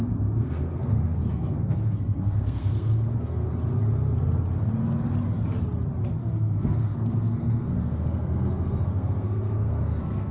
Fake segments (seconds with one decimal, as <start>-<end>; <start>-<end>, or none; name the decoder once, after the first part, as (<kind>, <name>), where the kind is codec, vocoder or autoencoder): 0.0-3.5 (codec, SNAC); 6.2-10.3